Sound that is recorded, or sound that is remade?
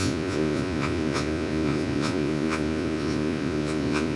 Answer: remade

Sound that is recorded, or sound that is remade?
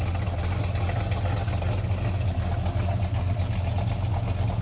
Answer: recorded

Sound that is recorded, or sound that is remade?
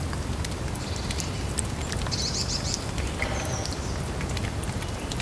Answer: recorded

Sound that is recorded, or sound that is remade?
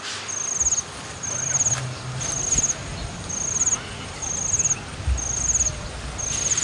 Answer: recorded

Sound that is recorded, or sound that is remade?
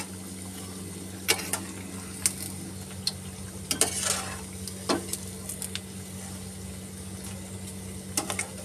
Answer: recorded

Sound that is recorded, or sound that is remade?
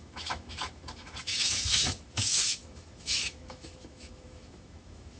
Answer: remade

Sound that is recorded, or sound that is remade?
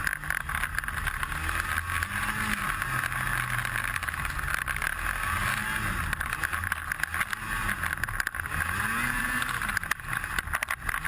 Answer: recorded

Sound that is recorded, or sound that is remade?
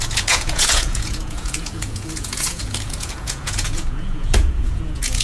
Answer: remade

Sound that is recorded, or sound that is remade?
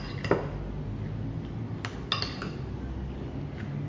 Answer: recorded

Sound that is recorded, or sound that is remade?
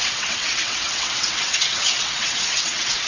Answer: remade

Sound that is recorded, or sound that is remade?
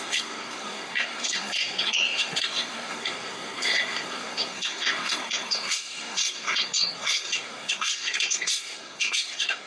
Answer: remade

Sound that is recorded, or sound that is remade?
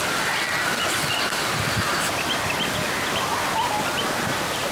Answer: recorded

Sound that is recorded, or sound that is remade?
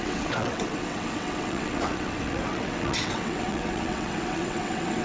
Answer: remade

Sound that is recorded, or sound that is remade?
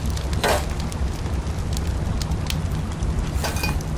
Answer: recorded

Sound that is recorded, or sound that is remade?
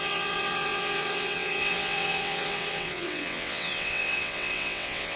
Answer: remade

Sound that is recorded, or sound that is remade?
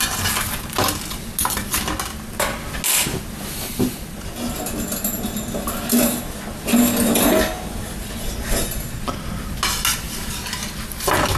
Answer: recorded